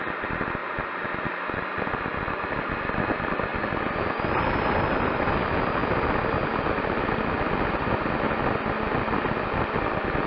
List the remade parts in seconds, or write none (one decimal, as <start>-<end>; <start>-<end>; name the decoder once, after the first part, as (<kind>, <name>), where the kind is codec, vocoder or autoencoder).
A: 0.6-1.8 (vocoder, BigVGAN v2); 3.5-4.1